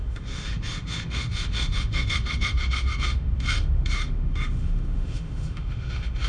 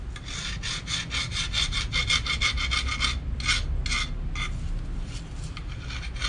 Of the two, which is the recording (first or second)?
second